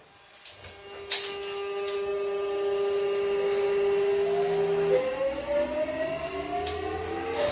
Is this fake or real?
real